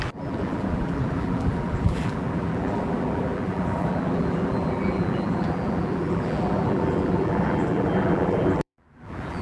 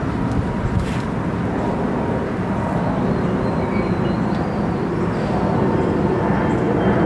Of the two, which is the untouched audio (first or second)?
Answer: second